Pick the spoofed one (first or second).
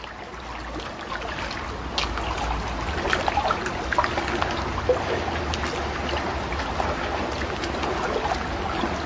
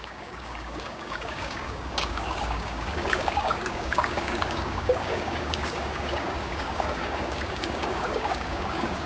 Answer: second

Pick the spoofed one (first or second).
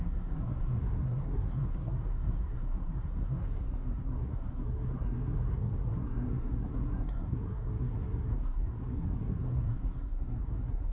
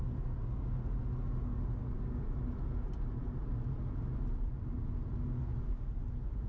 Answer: first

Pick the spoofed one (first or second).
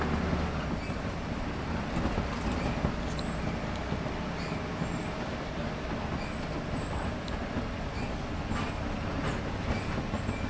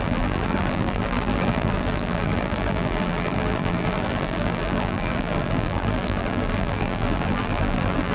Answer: second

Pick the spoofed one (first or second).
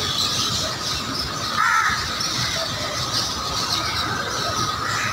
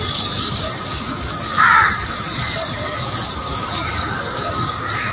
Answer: second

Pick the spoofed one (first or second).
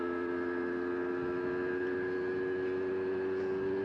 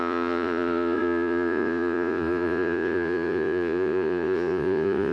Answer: second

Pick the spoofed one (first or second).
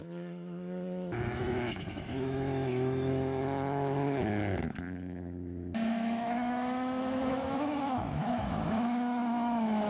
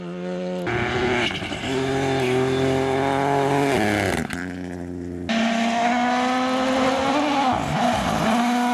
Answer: first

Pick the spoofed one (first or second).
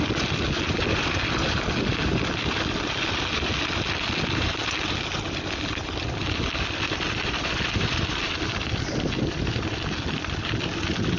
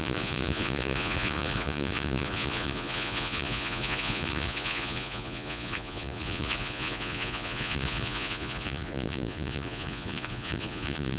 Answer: second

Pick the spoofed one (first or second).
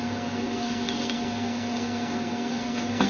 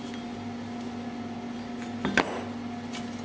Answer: first